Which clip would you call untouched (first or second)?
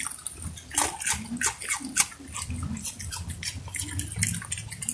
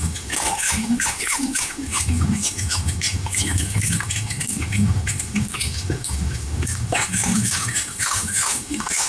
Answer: first